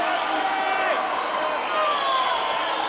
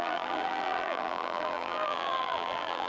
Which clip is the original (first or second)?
first